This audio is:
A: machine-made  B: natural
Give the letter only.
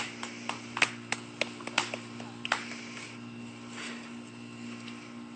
B